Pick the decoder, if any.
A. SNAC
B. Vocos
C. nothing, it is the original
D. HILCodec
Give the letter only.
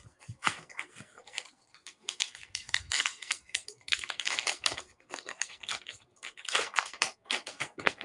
A